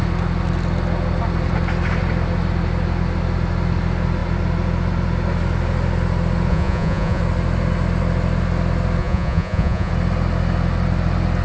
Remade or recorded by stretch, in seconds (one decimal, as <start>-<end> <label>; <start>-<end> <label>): 0.0-6.5 recorded; 6.5-7.2 remade; 7.2-9.0 recorded; 9.0-9.9 remade; 9.9-11.4 recorded